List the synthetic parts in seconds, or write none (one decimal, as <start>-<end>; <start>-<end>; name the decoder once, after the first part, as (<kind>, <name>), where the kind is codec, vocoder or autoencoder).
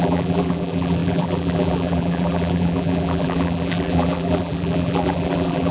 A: 0.0-5.7 (vocoder, BigVGAN v2)